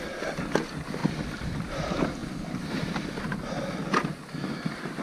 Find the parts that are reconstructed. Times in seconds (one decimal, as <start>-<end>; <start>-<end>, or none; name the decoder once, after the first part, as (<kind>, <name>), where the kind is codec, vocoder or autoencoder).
2.2-3.4 (vocoder, BigVGAN v2)